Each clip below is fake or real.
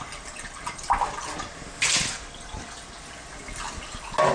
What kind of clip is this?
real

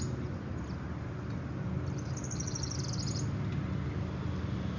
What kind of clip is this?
real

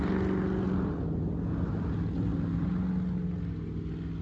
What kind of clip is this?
real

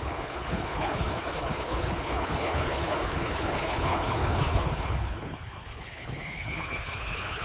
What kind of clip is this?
fake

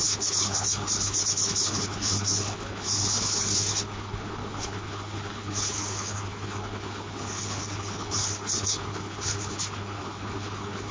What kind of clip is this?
fake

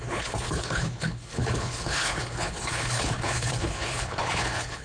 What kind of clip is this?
fake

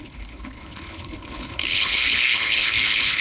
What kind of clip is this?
fake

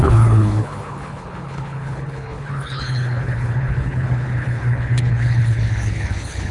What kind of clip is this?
fake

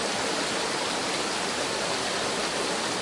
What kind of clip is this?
real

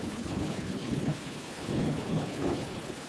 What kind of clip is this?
fake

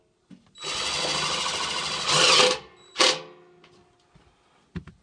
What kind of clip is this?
real